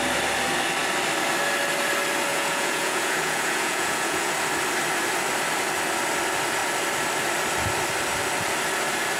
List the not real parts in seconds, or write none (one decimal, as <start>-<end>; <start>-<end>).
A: 2.3-4.3